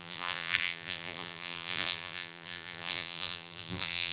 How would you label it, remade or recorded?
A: remade